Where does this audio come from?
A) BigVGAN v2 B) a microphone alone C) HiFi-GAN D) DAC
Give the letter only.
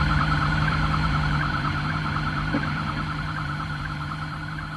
A